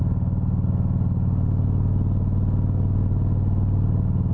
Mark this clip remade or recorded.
recorded